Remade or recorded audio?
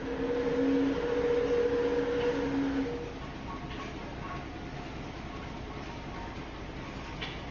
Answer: recorded